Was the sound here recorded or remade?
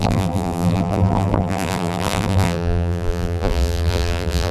remade